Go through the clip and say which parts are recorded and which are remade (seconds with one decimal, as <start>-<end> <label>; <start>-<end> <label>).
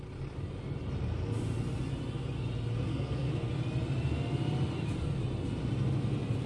0.0-2.9 recorded; 2.9-3.5 remade; 3.5-6.5 recorded